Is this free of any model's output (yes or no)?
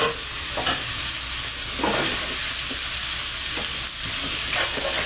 yes